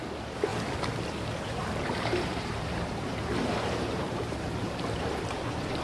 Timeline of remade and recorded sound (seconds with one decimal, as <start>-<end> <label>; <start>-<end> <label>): 0.0-2.3 recorded; 2.3-5.8 remade